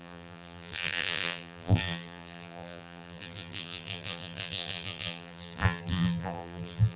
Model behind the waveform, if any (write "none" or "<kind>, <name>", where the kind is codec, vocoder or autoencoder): vocoder, BigVGAN v2